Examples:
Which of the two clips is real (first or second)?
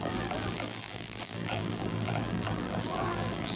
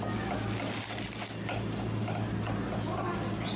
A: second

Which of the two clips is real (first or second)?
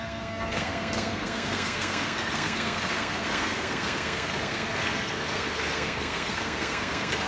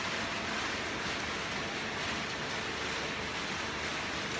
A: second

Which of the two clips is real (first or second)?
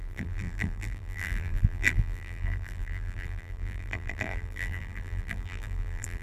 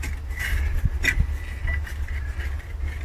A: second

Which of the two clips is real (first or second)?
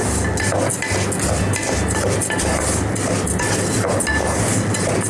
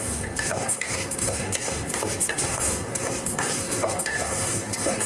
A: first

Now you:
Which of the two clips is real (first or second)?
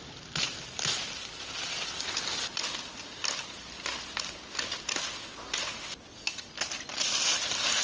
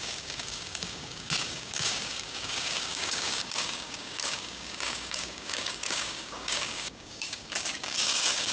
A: first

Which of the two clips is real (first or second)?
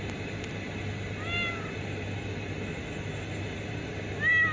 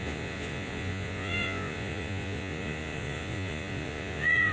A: first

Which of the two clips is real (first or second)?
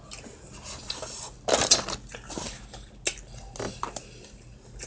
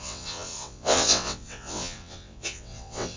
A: first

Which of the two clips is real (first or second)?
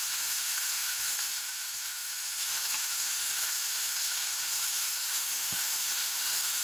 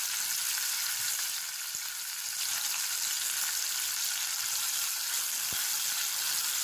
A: second